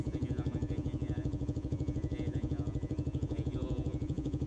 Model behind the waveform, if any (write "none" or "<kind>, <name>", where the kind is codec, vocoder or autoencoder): vocoder, Vocos